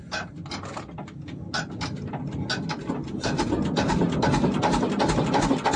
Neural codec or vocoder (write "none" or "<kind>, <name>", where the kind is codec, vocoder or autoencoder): none